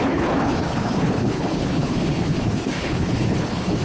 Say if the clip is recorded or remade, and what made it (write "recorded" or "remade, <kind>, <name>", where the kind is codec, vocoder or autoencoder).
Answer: remade, codec, HILCodec